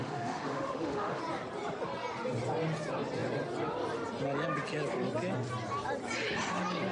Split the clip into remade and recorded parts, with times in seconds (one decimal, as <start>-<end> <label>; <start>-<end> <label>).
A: 0.0-1.2 remade; 1.2-6.9 recorded